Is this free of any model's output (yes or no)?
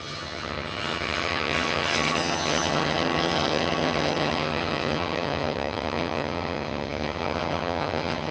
no